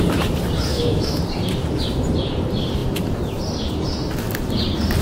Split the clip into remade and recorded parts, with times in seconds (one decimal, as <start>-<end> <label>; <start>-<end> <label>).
0.0-0.7 recorded; 0.7-1.2 remade; 1.2-5.0 recorded